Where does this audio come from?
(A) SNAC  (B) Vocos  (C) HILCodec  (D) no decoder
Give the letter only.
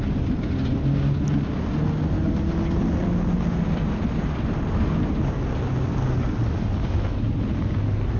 D